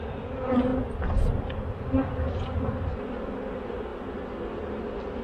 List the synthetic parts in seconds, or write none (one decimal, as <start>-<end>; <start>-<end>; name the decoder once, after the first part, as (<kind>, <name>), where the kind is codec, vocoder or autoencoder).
none